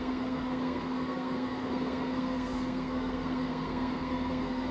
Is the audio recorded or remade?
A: remade